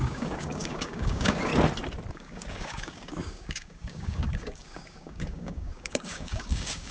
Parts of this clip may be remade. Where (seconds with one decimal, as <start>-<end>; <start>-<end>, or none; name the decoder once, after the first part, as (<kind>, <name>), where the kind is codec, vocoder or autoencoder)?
0.0-1.5 (codec, DAC); 2.1-6.9